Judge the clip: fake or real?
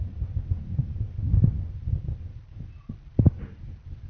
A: real